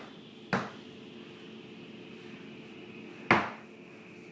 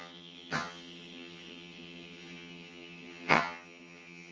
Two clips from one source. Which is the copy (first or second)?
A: second